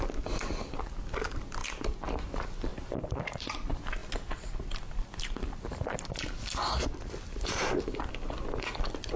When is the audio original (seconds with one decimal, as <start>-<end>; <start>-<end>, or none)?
1.6-2.2; 2.7-3.3; 4.0-5.8